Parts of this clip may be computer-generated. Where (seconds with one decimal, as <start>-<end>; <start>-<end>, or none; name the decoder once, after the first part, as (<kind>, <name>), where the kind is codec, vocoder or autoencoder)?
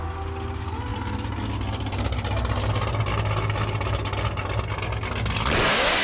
none